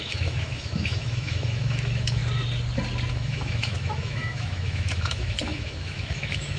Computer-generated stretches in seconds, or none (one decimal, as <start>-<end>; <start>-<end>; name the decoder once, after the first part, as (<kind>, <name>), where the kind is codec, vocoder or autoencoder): 0.0-2.2 (autoencoder, DAC-VAE); 3.1-6.6